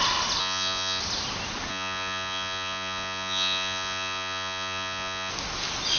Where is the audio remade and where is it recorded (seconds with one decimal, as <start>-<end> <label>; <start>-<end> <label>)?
0.0-0.4 recorded; 0.4-1.0 remade; 1.0-1.7 recorded; 1.7-5.3 remade; 5.3-6.0 recorded